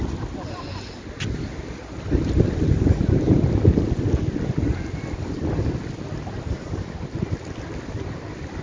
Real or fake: real